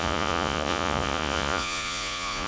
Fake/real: fake